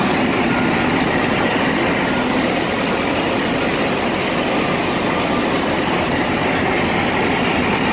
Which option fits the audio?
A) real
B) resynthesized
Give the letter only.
A